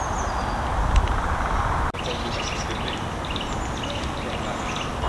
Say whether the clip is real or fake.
real